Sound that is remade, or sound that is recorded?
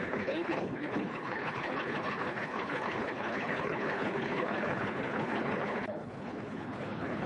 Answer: remade